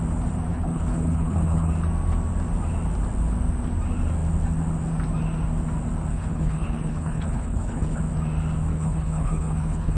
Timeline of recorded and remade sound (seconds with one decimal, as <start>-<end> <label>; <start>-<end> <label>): 0.0-0.5 recorded; 0.5-1.7 remade; 1.7-6.1 recorded; 6.1-8.0 remade; 8.0-8.7 recorded; 8.7-10.0 remade